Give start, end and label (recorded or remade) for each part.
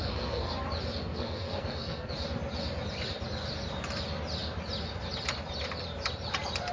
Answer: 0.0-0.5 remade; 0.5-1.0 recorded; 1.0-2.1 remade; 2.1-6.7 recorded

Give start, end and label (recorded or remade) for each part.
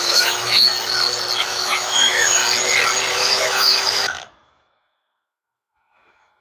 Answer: 0.0-0.7 remade; 0.7-1.4 recorded; 1.4-2.4 remade; 2.4-3.1 recorded; 3.1-6.4 remade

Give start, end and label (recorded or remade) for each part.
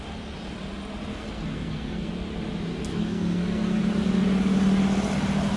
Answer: 0.0-1.1 recorded; 1.1-2.1 remade; 2.1-2.9 recorded; 2.9-3.8 remade; 3.8-5.6 recorded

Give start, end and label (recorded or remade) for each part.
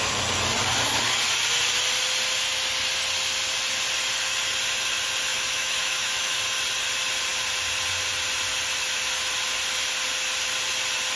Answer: 0.0-5.3 recorded; 5.3-6.4 remade; 6.4-11.2 recorded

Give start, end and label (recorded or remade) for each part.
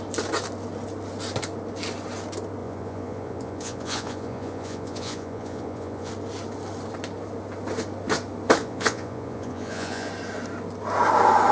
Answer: 0.0-2.6 recorded; 2.6-6.1 remade; 6.1-8.6 recorded; 8.6-10.1 remade; 10.1-11.5 recorded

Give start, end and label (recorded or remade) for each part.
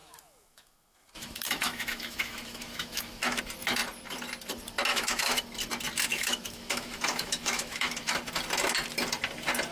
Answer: 0.0-3.4 remade; 3.4-4.9 recorded; 4.9-5.4 remade; 5.4-6.1 recorded; 6.1-8.1 remade; 8.1-9.7 recorded